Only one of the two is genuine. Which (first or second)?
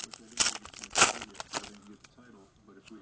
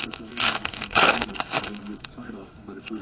first